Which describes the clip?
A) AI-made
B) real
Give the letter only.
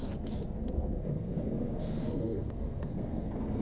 A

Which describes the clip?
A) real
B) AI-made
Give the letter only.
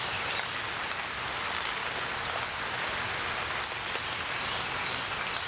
A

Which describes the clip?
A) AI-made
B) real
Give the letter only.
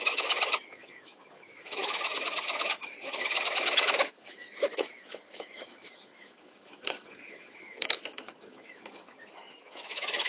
A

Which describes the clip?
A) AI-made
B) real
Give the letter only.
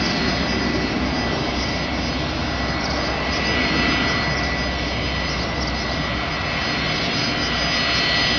B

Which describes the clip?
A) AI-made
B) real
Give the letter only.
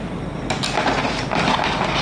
B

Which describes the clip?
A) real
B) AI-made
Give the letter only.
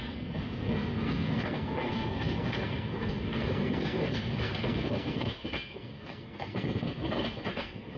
B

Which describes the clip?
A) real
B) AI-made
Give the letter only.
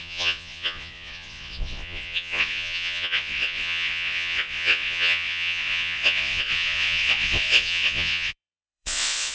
B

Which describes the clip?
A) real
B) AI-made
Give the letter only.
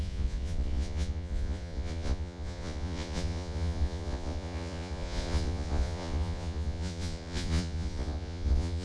B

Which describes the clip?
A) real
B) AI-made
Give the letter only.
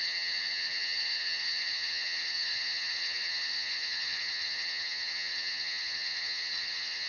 B